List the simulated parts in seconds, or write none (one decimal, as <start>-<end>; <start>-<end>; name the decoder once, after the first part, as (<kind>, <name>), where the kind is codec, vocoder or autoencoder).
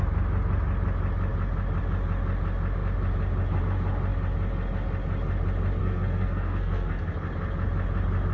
5.8-7.1 (codec, SNAC)